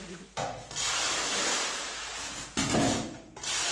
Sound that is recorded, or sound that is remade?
recorded